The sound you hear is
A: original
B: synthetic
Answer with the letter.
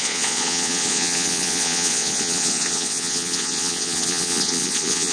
B